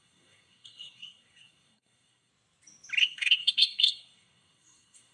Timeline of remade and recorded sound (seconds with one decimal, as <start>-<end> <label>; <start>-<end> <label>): 0.0-2.3 remade; 2.3-3.0 recorded; 3.0-5.1 remade